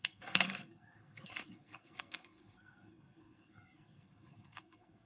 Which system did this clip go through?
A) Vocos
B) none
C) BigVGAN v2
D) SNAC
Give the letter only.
D